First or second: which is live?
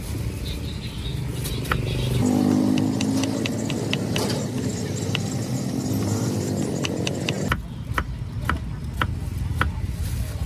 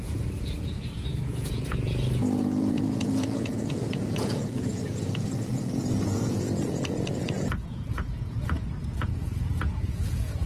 first